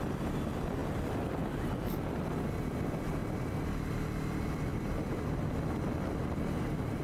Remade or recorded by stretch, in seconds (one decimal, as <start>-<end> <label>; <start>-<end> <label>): 0.0-7.0 recorded